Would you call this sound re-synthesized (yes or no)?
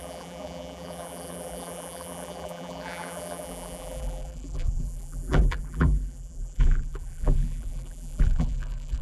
yes